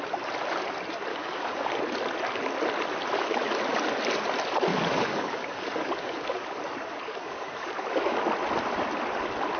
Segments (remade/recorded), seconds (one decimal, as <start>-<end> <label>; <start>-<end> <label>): 0.0-1.1 recorded; 1.1-1.7 remade; 1.7-4.7 recorded; 4.7-8.2 remade; 8.2-9.6 recorded